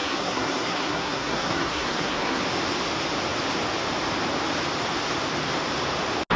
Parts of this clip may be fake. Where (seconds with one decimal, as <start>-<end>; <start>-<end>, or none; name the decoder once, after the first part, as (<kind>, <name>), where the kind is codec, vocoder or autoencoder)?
0.0-2.4 (codec, SNAC)

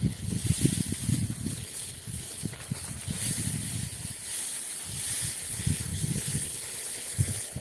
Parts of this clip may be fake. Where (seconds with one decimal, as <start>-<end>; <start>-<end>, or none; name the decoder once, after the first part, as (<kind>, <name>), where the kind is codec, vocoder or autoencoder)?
0.0-0.4 (codec, HILCodec); 1.5-2.8; 5.4-7.6

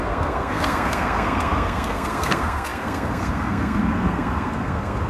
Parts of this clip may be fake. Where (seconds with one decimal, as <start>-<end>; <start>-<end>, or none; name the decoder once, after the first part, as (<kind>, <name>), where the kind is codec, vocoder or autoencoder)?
0.0-5.1 (codec, SNAC)

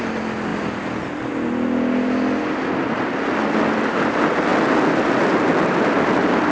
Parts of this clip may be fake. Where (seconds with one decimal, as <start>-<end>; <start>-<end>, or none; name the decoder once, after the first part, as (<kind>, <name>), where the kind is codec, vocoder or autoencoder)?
none

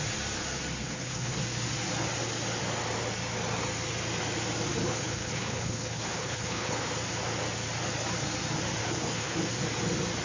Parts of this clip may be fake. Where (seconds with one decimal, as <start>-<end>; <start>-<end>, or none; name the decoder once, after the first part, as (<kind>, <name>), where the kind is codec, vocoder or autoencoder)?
0.8-1.4 (codec, HILCodec); 4.8-6.9; 8.8-9.5

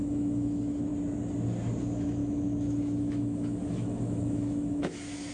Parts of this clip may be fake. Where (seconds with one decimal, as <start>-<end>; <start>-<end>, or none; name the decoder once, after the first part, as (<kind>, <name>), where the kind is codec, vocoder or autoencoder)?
0.0-0.9 (autoencoder, DAC-VAE); 1.8-5.3

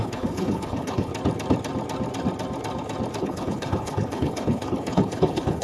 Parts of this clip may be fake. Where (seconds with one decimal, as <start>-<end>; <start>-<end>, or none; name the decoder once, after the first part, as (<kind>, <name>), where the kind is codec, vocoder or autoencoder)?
0.0-1.1 (codec, HILCodec); 3.2-5.6

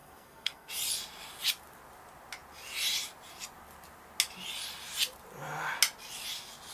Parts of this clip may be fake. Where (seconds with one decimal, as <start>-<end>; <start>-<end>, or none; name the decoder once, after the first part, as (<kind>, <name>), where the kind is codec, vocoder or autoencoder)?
0.0-0.7 (codec, SNAC)